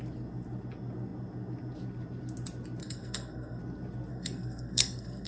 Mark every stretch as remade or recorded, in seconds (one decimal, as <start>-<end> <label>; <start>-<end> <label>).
0.0-2.8 recorded; 2.8-3.6 remade; 3.6-4.1 recorded; 4.1-5.3 remade